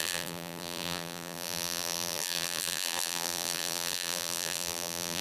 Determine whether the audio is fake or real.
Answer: fake